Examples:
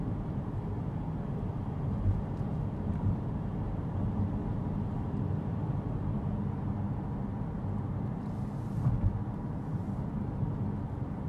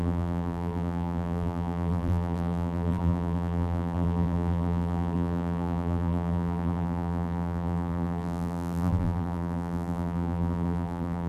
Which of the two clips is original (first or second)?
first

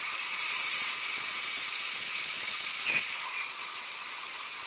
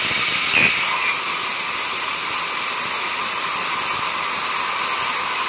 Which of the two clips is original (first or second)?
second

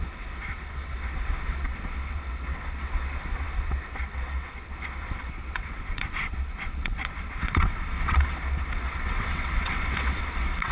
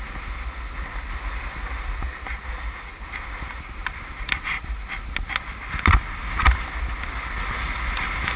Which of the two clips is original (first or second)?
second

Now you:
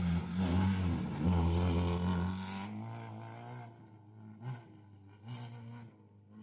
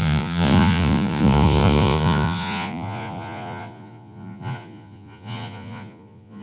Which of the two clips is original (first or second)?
first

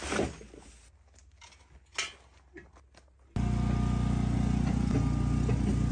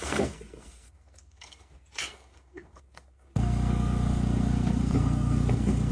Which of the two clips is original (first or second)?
first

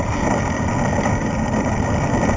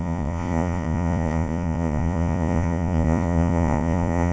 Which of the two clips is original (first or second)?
first